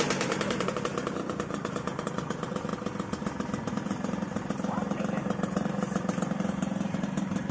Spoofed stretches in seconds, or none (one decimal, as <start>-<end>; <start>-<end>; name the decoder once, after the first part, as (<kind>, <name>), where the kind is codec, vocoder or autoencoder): 0.0-2.7 (vocoder, BigVGAN v2); 3.7-7.5